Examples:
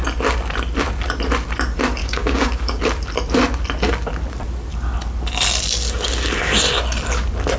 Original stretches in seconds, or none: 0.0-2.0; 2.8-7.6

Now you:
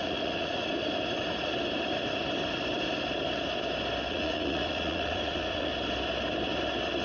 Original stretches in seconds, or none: 0.7-4.1; 5.7-7.0

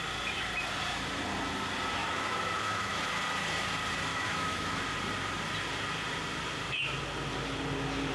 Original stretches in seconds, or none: 0.0-2.0; 3.1-4.1; 4.8-8.1

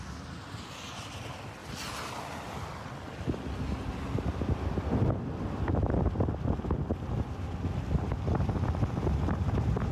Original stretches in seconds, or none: 0.0-9.9